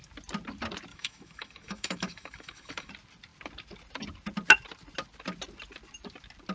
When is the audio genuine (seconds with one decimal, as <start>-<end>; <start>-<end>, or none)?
0.0-0.9; 2.9-6.5